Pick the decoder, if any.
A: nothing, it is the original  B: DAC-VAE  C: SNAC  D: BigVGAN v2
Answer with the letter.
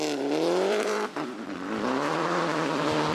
D